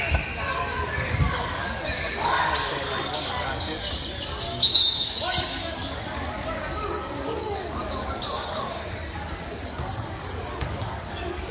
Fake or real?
fake